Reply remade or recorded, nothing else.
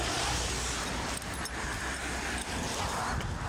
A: recorded